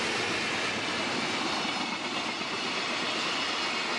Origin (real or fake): real